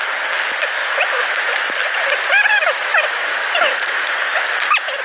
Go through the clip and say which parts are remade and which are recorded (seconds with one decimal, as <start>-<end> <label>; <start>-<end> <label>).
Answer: 0.0-0.8 recorded; 0.8-1.3 remade; 1.3-2.5 recorded; 2.5-4.4 remade; 4.4-5.0 recorded